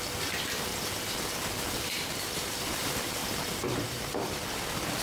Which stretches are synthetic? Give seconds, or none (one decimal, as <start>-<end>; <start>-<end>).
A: 0.0-0.7; 1.5-5.0